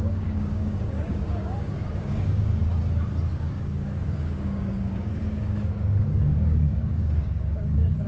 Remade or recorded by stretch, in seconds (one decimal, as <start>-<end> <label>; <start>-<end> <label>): 0.0-2.6 remade; 2.6-3.3 recorded; 3.3-8.1 remade